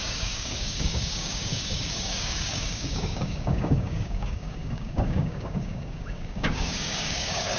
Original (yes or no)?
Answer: no